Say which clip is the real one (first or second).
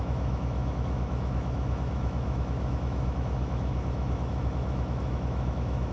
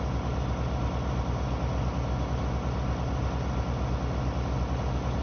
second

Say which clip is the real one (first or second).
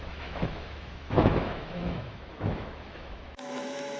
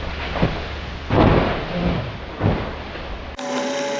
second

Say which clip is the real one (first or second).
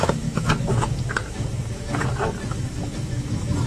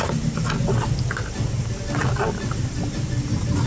second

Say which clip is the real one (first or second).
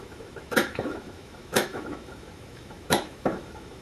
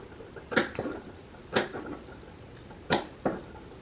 second